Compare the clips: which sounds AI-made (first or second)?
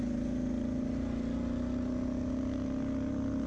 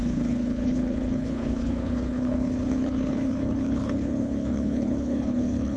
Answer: second